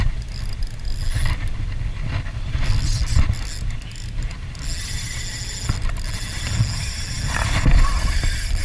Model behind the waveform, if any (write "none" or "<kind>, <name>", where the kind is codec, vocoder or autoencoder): none